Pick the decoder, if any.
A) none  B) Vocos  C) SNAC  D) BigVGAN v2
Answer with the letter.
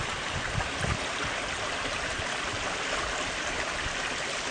A